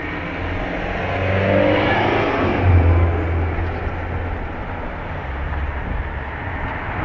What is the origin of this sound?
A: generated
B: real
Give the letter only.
B